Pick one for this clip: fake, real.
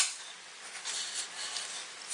real